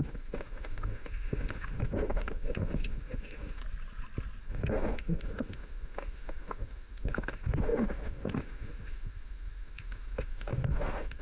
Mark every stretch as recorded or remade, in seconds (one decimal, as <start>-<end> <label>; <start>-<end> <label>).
0.0-3.6 remade; 3.6-4.4 recorded; 4.4-11.2 remade